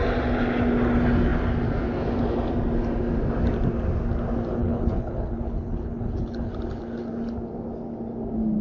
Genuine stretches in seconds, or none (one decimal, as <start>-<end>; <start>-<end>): 0.0-4.6; 6.5-8.6